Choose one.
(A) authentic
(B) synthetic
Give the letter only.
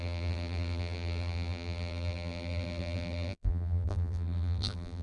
B